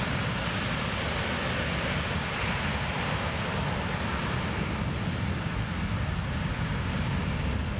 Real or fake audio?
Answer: real